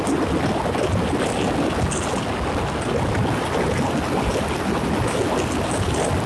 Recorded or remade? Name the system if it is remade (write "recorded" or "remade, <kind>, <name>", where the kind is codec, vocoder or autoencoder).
recorded